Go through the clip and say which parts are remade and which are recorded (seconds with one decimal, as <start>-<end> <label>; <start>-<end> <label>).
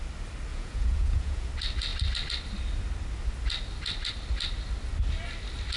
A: 0.0-0.5 recorded; 0.5-1.5 remade; 1.5-5.8 recorded